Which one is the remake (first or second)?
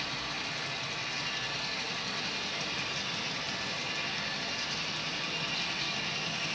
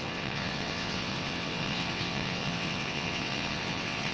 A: second